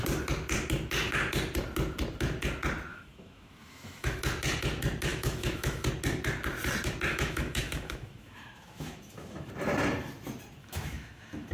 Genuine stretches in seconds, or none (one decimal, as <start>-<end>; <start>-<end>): 0.0-2.9; 4.2-5.1; 5.9-7.1; 9.5-10.6